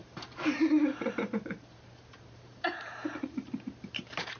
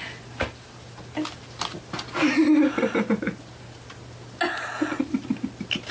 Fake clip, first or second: first